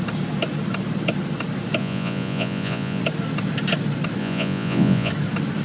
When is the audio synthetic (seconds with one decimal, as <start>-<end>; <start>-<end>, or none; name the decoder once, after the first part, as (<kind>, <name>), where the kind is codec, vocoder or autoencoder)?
1.8-3.0 (vocoder, Vocos); 4.2-5.1